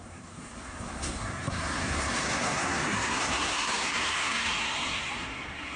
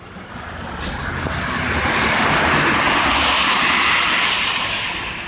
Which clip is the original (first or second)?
second